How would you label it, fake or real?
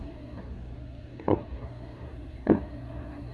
fake